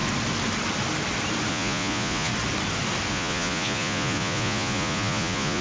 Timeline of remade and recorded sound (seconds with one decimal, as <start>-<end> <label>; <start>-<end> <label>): 0.0-1.5 recorded; 1.5-2.3 remade; 2.3-3.1 recorded; 3.1-5.6 remade